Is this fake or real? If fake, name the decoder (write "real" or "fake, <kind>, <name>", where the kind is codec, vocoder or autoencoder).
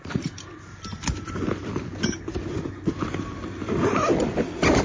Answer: real